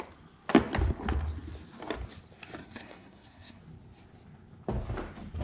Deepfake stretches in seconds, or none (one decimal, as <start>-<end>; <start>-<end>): 2.6-3.6